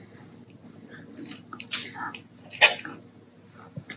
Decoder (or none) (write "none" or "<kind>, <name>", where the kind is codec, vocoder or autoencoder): none